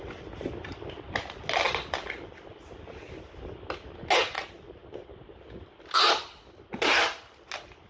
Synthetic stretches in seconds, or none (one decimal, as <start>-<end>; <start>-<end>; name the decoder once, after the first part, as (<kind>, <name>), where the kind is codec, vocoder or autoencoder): none